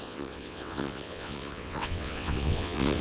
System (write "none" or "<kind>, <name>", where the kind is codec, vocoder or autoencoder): vocoder, WaveNeXt